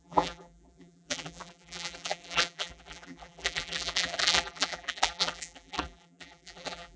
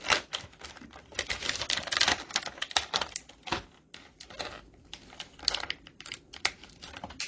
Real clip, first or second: second